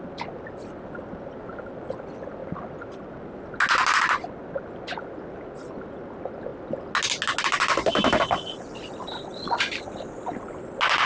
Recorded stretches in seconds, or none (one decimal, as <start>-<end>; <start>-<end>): 0.0-11.1